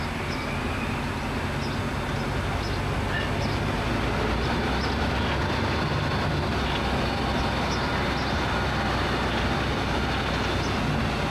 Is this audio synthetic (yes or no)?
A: no